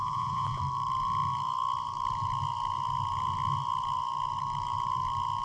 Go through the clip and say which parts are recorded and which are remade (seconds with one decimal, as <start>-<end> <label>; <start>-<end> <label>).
0.0-0.6 remade; 0.6-5.4 recorded